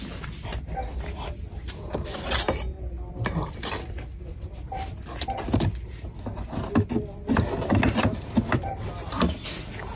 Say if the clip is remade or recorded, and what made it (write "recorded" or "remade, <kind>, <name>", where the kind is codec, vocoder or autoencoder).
recorded